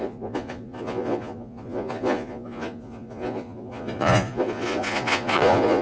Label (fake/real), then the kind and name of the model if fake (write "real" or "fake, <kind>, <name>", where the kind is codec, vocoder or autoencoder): fake, vocoder, Vocos